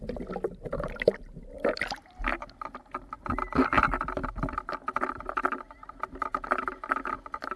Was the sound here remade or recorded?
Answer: recorded